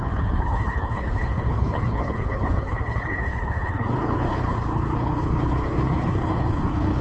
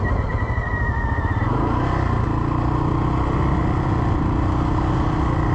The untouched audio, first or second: second